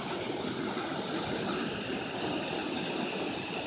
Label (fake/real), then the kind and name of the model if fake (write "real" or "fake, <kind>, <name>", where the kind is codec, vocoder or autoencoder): real